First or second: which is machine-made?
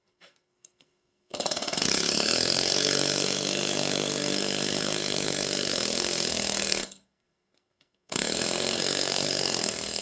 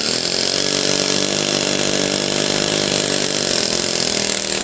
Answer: first